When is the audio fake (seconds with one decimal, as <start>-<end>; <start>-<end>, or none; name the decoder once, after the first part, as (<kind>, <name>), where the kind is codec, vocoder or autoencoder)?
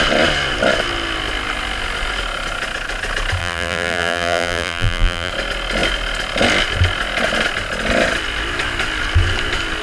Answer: 3.4-5.3 (vocoder, BigVGAN v2)